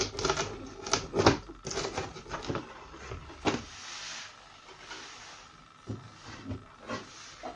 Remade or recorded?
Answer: recorded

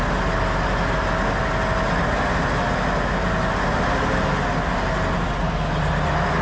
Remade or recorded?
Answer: recorded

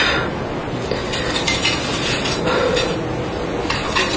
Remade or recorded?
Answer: recorded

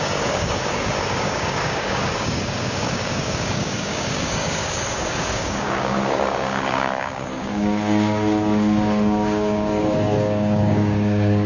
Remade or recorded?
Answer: remade